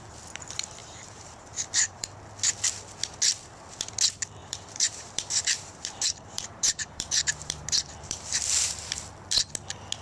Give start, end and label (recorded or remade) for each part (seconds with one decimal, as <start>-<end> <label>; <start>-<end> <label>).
0.0-0.8 recorded; 0.8-2.1 remade; 2.1-4.4 recorded; 4.4-8.9 remade; 8.9-10.0 recorded